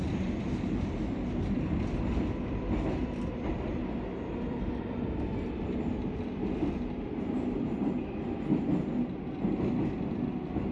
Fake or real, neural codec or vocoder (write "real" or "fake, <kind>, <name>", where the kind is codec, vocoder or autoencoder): real